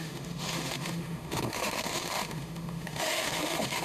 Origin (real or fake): fake